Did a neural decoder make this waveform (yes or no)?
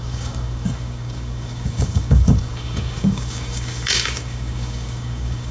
yes